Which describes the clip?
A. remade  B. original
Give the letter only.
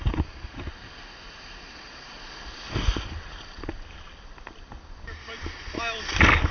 B